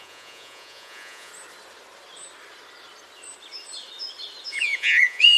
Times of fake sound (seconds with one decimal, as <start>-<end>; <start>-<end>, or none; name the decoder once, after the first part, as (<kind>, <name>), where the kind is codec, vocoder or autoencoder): 0.0-1.3 (vocoder, Vocos); 4.5-5.4